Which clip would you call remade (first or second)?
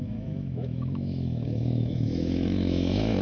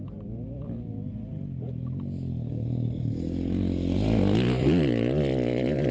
first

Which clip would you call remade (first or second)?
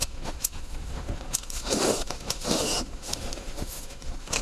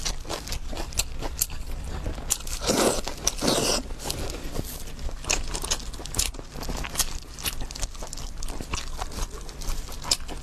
first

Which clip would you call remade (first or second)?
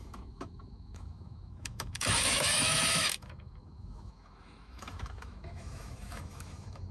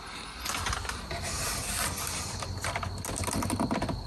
first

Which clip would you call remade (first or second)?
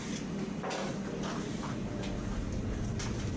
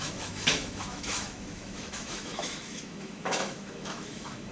second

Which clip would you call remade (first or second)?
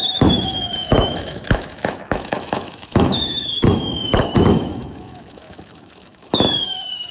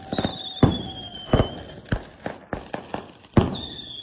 first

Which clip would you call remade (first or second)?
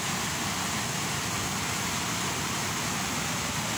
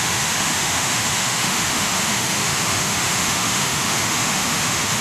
second